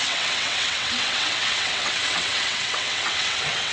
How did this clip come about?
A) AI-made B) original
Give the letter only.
A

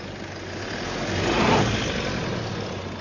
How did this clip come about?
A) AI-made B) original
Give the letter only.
B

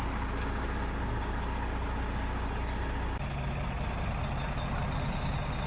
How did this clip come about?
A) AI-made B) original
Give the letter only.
B